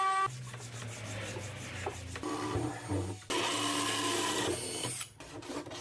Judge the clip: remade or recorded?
recorded